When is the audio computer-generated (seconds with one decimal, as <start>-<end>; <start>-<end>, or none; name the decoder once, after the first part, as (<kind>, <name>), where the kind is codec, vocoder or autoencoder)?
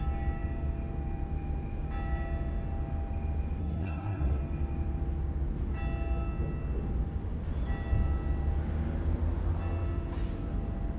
3.6-4.4 (codec, SNAC)